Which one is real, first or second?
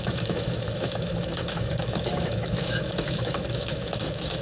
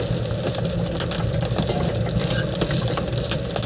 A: second